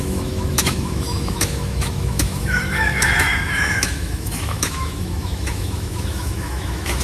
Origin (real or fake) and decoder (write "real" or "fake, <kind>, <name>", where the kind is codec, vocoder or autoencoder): fake, autoencoder, DAC-VAE